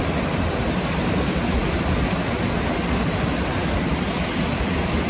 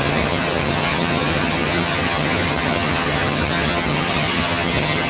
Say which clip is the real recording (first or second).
first